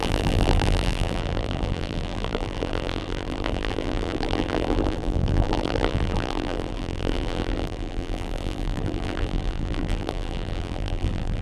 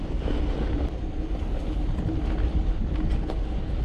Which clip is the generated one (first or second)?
first